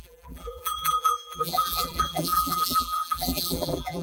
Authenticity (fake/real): fake